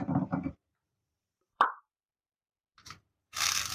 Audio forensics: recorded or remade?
remade